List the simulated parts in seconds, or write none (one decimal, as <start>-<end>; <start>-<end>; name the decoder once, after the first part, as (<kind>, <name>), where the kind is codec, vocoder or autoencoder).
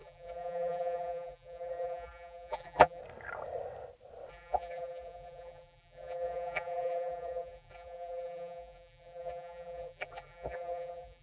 0.0-3.0 (vocoder, BigVGAN v2); 4.3-11.2